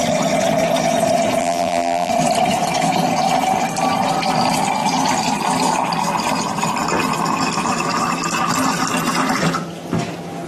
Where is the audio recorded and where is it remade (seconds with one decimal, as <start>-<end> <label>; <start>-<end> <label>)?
0.0-1.4 recorded; 1.4-2.1 remade; 2.1-10.5 recorded